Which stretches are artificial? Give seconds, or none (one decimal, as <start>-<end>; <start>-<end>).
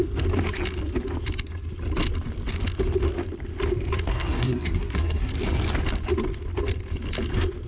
4.1-5.3